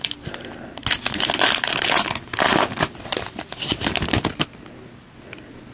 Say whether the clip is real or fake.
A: real